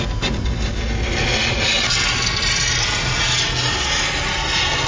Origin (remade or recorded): recorded